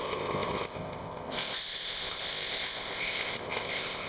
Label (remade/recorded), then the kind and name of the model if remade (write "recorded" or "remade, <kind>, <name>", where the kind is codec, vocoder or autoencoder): remade, codec, ZipCodec